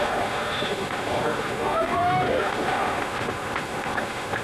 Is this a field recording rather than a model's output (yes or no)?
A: no